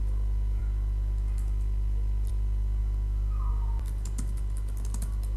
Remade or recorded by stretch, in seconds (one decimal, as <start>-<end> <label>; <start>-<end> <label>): 0.0-5.4 recorded